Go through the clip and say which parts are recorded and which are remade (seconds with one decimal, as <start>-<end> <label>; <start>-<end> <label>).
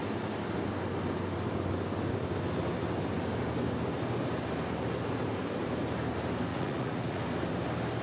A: 0.0-6.5 recorded; 6.5-7.2 remade; 7.2-8.0 recorded